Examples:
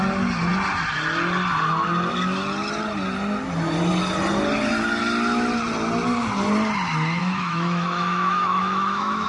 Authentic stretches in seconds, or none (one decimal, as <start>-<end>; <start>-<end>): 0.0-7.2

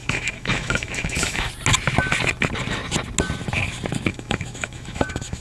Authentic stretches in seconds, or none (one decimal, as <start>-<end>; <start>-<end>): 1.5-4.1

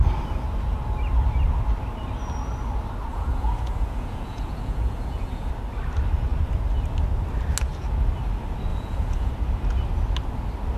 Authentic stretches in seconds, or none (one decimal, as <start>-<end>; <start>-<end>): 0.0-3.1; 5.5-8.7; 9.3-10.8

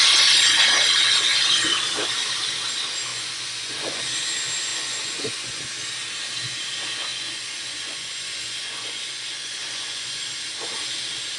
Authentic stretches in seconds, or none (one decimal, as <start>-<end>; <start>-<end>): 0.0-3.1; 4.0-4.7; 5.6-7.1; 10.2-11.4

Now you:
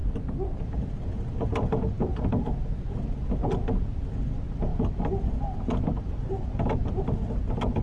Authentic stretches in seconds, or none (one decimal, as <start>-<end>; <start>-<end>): 0.0-7.8

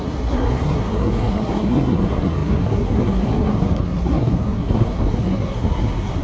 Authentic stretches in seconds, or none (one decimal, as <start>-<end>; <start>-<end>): none